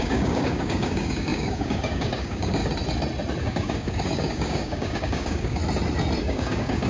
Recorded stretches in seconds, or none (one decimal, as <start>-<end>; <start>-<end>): 2.6-3.4; 5.6-6.2